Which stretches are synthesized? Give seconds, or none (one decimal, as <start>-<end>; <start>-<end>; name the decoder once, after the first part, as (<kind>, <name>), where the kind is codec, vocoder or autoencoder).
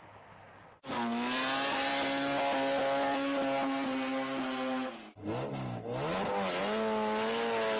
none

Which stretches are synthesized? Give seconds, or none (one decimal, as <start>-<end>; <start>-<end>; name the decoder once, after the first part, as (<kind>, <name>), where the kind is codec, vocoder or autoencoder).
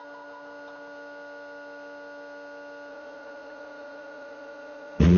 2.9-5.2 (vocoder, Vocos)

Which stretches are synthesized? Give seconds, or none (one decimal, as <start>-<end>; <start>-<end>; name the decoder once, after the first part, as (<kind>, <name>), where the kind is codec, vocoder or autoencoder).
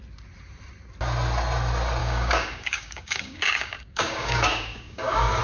2.0-5.4 (codec, DAC)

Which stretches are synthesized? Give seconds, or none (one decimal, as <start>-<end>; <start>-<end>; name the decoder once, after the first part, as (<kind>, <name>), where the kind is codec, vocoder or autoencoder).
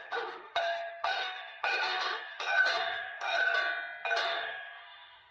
0.0-3.4 (autoencoder, DAC-VAE); 4.2-5.3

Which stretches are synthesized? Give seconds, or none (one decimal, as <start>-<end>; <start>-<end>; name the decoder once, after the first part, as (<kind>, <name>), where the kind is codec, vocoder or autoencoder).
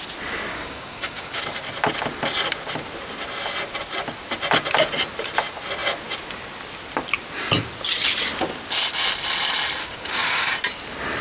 0.5-1.4 (codec, DAC); 9.8-10.5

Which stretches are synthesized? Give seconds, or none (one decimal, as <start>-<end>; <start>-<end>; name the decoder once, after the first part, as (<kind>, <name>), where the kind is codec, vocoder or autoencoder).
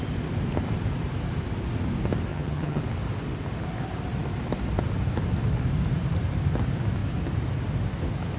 2.3-2.8 (vocoder, HiFi-GAN)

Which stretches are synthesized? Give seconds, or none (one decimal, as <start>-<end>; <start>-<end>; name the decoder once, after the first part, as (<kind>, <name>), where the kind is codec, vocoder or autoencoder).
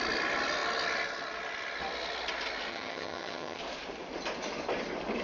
2.7-3.6 (vocoder, HiFi-GAN)